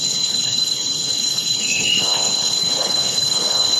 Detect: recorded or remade remade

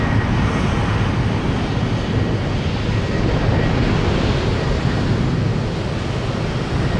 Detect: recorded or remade recorded